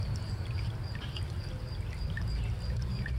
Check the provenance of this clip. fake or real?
fake